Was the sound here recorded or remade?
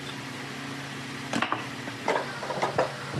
recorded